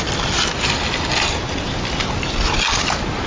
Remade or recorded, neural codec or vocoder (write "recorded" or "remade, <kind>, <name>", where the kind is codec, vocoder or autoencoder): recorded